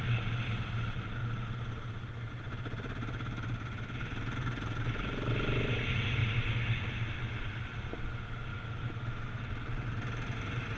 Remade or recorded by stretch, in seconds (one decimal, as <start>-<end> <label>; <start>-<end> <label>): 0.0-8.5 recorded; 8.5-9.4 remade; 9.4-10.8 recorded